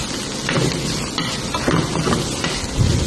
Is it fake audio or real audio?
real